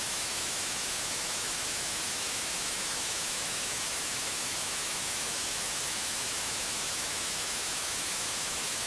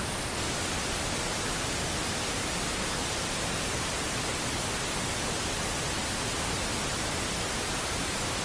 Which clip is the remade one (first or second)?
first